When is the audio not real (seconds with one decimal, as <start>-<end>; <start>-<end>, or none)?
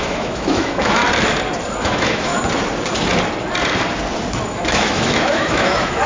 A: 0.0-1.0; 1.8-2.3; 4.5-6.1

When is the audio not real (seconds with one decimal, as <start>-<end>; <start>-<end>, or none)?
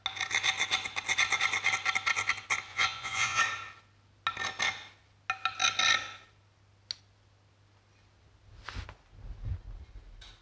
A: 2.7-3.4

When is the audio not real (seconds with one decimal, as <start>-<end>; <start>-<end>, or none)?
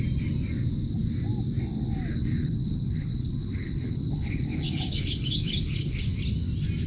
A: 2.1-6.1